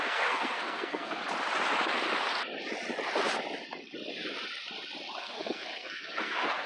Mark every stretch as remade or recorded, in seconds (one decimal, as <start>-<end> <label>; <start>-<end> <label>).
0.0-1.2 remade; 1.2-5.2 recorded; 5.2-6.7 remade